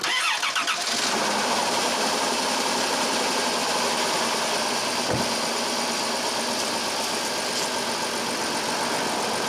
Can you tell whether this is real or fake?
real